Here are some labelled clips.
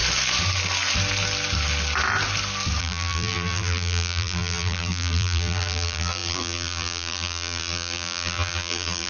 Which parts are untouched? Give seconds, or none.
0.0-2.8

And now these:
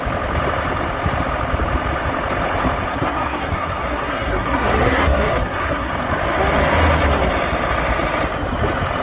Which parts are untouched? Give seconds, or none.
0.0-2.9; 5.9-9.0